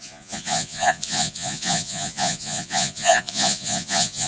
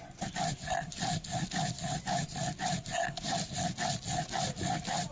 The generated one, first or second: first